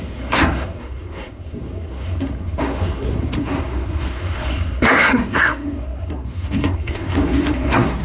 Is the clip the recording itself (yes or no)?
no